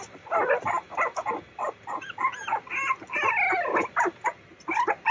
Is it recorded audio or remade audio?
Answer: recorded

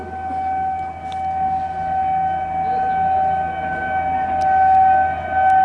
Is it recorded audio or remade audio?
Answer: recorded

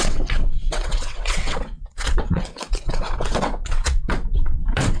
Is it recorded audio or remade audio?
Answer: remade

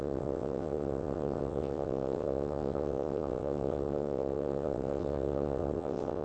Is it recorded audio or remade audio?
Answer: remade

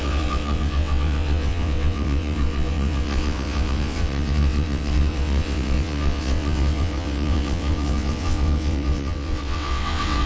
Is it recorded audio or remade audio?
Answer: remade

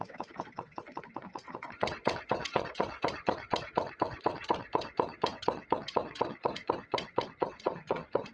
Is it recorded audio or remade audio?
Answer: remade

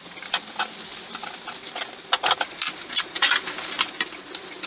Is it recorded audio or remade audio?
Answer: recorded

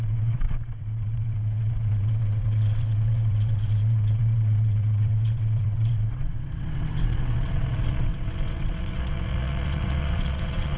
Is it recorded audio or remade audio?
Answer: remade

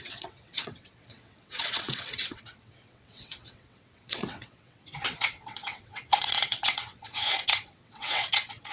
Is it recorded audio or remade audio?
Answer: remade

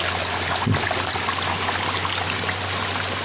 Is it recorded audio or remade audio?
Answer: recorded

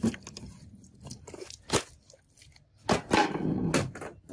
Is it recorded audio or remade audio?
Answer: recorded